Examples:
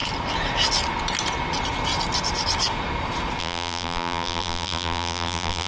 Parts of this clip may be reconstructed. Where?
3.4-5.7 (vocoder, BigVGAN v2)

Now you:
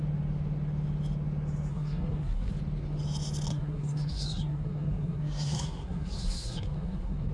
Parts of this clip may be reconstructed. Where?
1.7-2.5 (codec, SNAC); 3.5-7.3